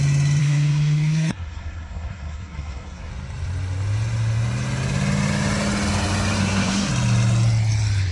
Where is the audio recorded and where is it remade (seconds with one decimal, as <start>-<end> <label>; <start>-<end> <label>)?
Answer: 0.0-0.4 recorded; 0.4-3.1 remade; 3.1-6.4 recorded; 6.4-6.9 remade; 6.9-8.1 recorded